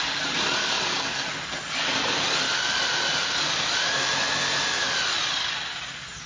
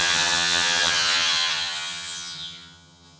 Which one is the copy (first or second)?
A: second